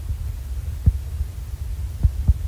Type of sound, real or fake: real